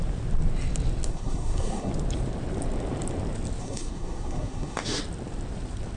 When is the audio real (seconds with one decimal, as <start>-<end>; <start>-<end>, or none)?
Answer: 0.0-1.1; 1.9-3.6; 5.0-6.0